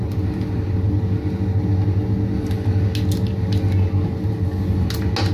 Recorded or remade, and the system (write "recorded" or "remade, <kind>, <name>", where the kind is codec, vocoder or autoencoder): recorded